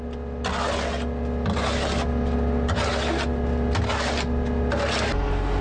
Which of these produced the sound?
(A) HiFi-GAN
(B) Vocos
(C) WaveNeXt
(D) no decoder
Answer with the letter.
D